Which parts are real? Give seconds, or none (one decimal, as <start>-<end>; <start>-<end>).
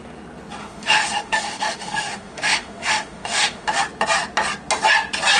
0.0-0.6; 3.8-5.4